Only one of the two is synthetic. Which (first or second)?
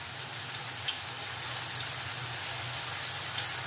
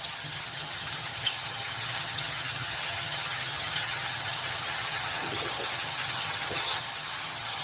second